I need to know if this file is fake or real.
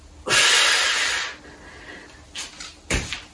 real